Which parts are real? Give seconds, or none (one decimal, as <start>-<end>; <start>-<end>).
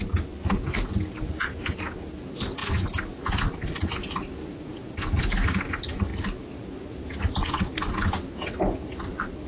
0.0-6.1; 7.8-9.5